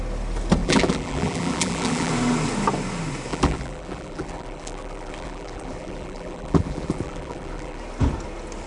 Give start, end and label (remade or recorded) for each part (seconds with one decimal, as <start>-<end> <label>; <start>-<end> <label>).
0.0-0.6 recorded; 0.6-2.1 remade; 2.1-3.3 recorded; 3.3-7.8 remade; 7.8-8.7 recorded